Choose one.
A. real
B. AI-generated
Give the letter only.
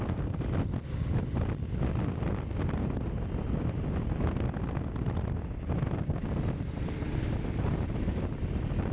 A